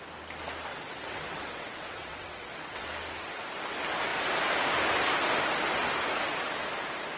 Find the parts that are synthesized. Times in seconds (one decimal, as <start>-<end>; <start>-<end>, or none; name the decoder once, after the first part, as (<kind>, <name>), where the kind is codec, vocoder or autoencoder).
0.7-2.9 (vocoder, WaveNeXt)